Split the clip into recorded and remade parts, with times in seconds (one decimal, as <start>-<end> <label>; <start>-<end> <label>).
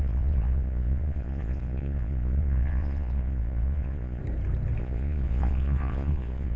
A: 0.0-4.2 remade; 4.2-4.8 recorded; 4.8-6.6 remade